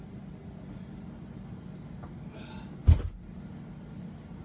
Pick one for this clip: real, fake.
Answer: real